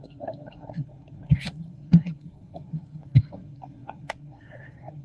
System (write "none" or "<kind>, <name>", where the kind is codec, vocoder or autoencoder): codec, SNAC